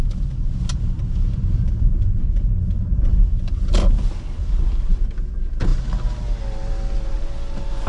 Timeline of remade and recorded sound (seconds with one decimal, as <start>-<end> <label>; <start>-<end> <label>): 0.0-7.9 recorded